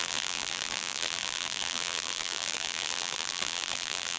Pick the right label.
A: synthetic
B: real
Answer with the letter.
A